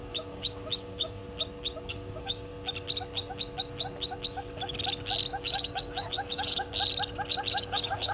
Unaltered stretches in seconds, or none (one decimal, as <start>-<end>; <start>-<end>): 1.2-1.9; 2.5-5.4; 6.7-7.5